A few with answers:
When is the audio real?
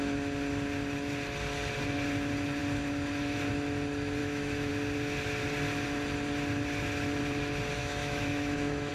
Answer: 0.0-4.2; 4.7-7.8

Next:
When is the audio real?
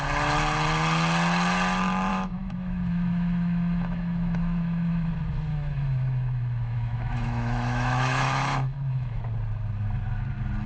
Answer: 0.0-2.1; 5.1-5.5; 9.2-10.7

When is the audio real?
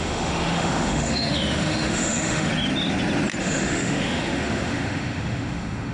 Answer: 2.5-3.4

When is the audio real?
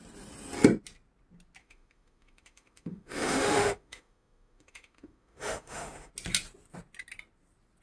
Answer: 0.0-1.6; 6.1-7.8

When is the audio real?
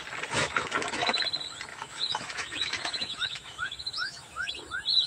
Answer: 0.0-0.4; 1.2-1.7; 4.5-5.1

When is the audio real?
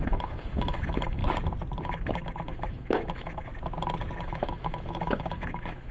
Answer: 1.2-1.8; 3.5-4.2